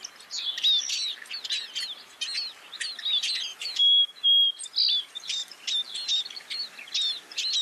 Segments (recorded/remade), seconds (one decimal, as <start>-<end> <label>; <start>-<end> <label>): 0.0-3.5 recorded; 3.5-4.1 remade; 4.1-7.6 recorded